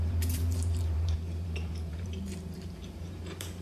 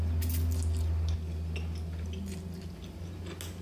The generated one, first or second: first